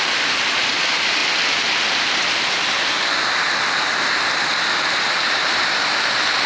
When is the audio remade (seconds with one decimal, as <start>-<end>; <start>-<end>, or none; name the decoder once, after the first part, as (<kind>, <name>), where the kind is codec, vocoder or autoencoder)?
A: 0.0-1.2 (vocoder, BigVGAN v2); 5.1-6.5